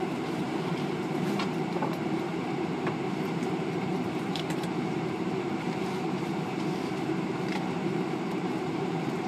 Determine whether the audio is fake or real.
fake